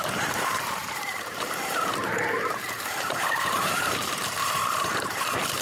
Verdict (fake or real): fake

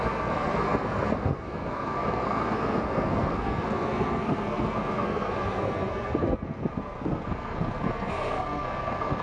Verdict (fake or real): fake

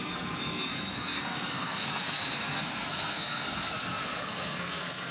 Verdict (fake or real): fake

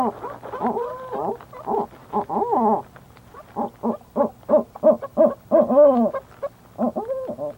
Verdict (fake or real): real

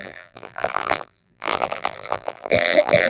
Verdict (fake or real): fake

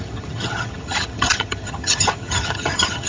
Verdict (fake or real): fake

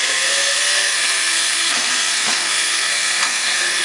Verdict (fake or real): fake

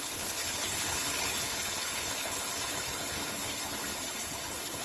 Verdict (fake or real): fake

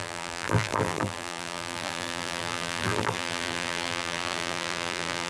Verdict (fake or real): fake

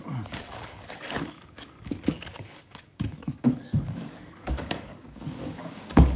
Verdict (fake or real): fake